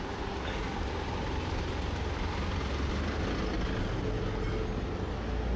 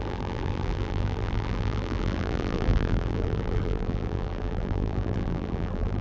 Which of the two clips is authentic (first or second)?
first